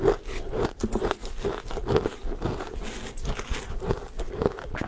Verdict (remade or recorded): recorded